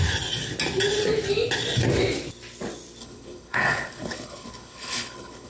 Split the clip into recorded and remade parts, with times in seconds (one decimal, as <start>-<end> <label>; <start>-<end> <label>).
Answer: 0.0-3.0 recorded; 3.0-5.5 remade